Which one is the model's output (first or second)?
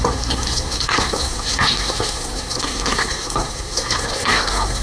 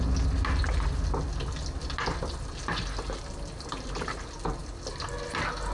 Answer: first